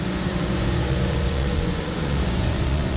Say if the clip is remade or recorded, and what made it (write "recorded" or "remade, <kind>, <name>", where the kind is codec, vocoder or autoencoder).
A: remade, vocoder, Vocos